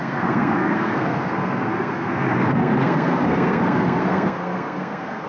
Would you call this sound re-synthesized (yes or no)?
yes